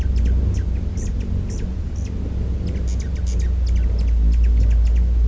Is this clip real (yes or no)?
yes